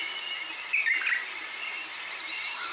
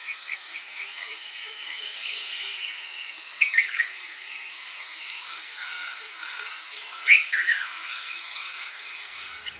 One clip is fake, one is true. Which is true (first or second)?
first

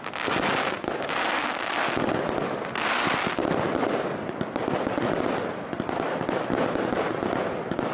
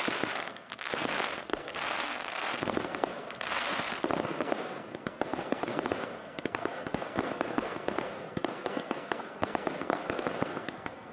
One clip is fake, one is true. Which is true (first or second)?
first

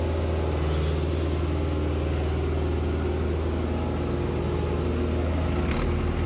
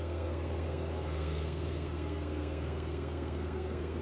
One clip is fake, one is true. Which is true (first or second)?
first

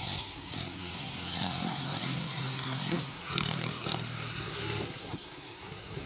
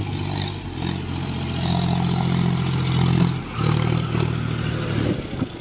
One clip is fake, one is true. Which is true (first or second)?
second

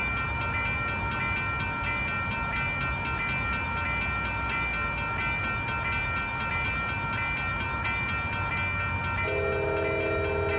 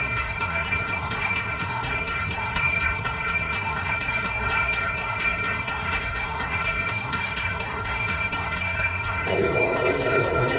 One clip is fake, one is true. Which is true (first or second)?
first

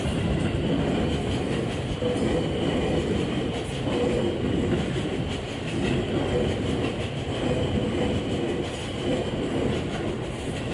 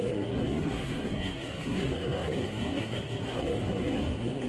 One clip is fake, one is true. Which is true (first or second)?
first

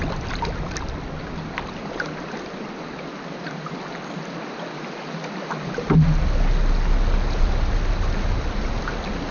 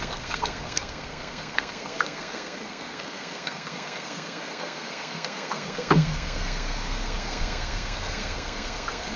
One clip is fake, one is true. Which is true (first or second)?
first